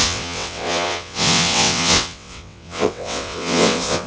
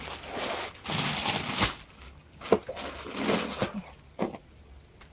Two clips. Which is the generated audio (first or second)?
first